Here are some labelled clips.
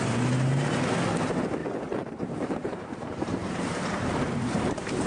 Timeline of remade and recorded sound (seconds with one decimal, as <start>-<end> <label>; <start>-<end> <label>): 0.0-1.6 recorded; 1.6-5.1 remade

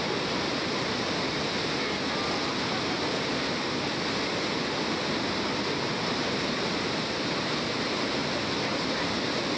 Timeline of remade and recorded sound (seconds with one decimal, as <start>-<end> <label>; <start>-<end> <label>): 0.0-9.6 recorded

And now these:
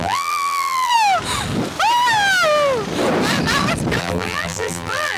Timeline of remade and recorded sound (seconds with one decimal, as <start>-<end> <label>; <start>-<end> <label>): 0.0-0.9 remade; 0.9-4.0 recorded; 4.0-5.2 remade

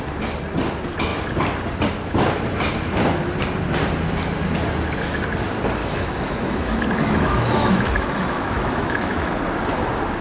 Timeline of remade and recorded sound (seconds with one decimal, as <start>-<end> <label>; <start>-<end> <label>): 0.0-5.8 recorded; 5.8-9.3 remade; 9.3-10.2 recorded

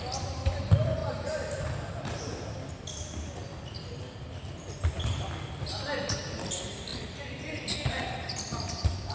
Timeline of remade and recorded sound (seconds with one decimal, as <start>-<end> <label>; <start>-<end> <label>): 0.0-9.1 recorded